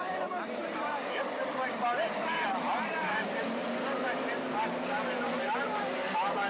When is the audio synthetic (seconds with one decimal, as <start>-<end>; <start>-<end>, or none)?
0.0-6.5